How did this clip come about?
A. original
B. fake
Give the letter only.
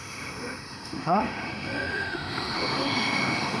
B